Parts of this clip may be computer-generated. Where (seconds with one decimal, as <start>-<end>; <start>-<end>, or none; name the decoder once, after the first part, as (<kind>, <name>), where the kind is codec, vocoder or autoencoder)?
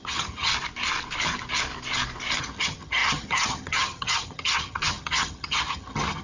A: 0.0-0.5 (vocoder, HiFi-GAN); 2.4-6.2